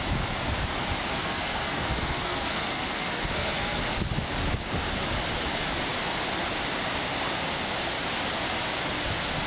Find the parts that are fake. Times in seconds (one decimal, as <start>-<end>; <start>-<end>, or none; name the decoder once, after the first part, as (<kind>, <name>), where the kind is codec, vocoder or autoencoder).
1.1-3.8 (codec, SNAC)